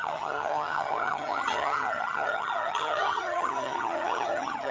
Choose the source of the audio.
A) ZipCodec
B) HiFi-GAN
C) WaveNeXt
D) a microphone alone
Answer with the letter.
B